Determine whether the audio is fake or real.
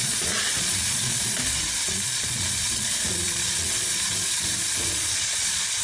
fake